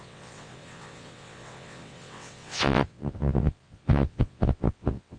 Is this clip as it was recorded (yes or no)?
no